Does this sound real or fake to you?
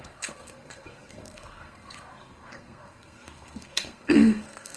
fake